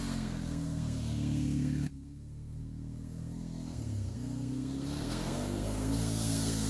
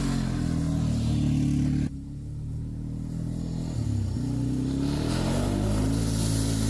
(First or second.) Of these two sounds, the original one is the second